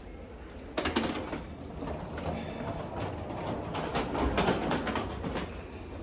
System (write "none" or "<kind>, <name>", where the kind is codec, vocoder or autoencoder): none